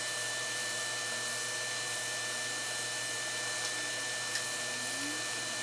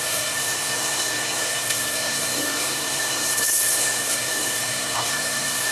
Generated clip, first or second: second